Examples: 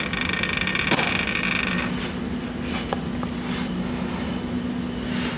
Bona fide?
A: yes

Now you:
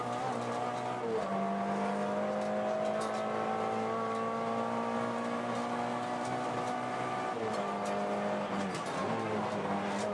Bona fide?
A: yes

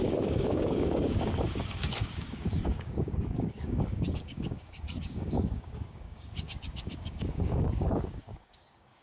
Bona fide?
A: no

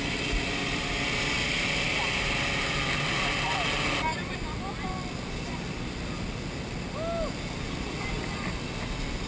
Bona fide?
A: yes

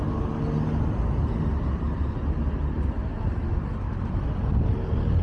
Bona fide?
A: yes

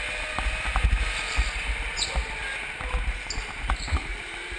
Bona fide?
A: yes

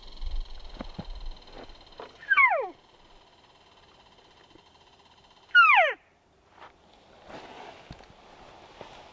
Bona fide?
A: yes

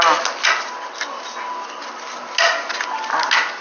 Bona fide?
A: yes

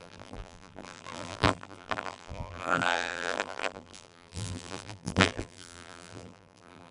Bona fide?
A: no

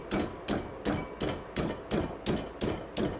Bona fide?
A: yes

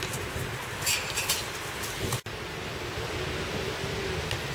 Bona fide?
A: yes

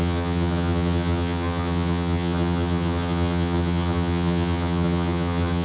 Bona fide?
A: no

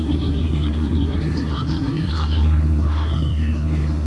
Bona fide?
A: no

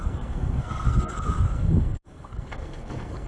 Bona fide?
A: no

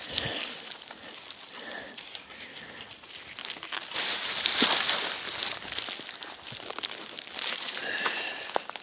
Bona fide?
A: yes